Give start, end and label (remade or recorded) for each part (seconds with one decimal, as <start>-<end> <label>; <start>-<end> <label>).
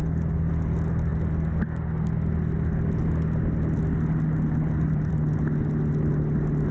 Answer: 0.0-0.5 remade; 0.5-6.7 recorded